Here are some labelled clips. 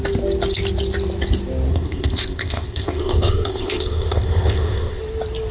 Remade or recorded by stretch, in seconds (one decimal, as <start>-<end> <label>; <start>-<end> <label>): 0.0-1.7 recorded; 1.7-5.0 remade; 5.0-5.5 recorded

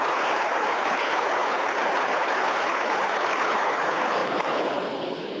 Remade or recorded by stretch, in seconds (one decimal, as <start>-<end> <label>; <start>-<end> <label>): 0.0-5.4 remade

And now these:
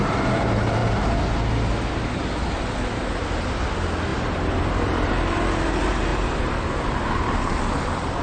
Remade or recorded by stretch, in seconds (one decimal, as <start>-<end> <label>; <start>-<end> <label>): 0.0-4.1 recorded; 4.1-5.1 remade; 5.1-6.1 recorded; 6.1-7.5 remade; 7.5-8.2 recorded

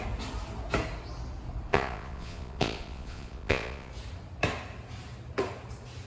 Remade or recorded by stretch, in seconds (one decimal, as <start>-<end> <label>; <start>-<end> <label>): 0.0-1.7 recorded; 1.7-3.9 remade; 3.9-6.1 recorded

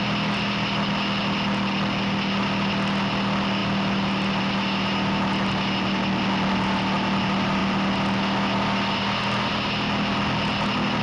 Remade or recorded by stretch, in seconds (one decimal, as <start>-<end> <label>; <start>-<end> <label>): 0.0-11.0 recorded

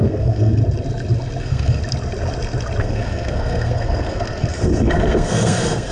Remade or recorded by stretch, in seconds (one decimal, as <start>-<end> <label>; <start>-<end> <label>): 0.0-0.6 remade; 0.6-1.4 recorded; 1.4-1.8 remade; 1.8-2.8 recorded; 2.8-5.9 remade